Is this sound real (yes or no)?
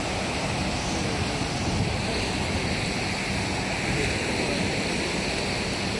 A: yes